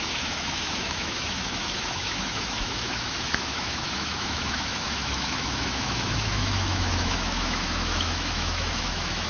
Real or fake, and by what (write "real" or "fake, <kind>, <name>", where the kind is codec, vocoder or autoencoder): fake, autoencoder, DAC-VAE